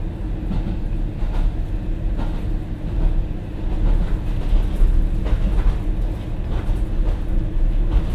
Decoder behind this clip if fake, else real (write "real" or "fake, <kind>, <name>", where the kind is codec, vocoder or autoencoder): real